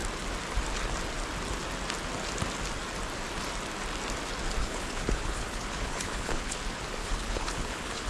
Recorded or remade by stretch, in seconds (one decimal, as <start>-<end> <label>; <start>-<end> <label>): 0.0-4.6 recorded; 4.6-6.6 remade; 6.6-7.0 recorded; 7.0-8.1 remade